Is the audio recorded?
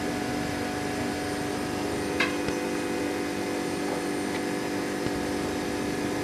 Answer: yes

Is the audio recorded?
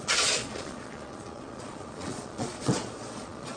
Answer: no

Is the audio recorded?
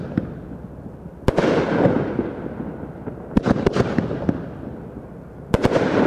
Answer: yes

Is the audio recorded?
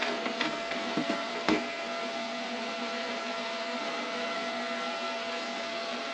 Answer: no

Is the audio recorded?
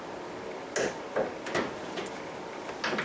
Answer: yes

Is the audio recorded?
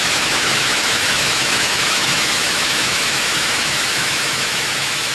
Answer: no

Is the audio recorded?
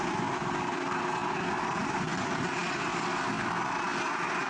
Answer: yes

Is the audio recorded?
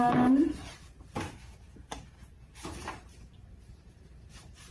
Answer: no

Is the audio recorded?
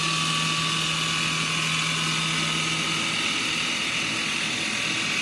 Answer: yes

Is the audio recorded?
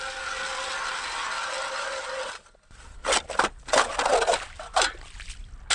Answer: yes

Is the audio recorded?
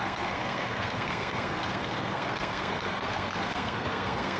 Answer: no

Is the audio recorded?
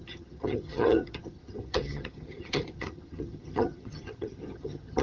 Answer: no